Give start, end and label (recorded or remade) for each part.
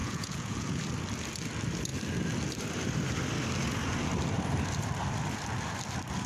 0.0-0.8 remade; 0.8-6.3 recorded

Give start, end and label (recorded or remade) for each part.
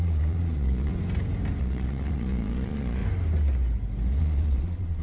0.0-0.9 remade; 0.9-1.6 recorded; 1.6-3.0 remade; 3.0-4.2 recorded; 4.2-5.0 remade